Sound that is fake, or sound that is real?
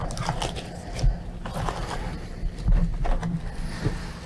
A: real